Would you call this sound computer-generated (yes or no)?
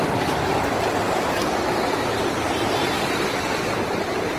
no